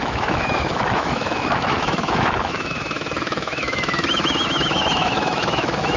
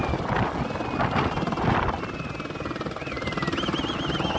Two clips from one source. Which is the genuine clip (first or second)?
second